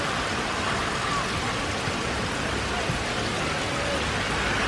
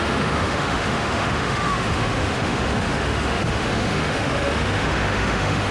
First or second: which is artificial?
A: second